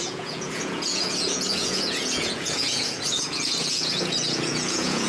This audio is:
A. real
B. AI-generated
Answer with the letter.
B